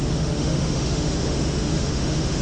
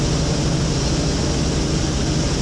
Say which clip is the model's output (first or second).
first